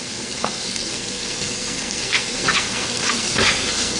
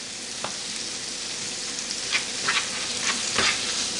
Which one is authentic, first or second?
second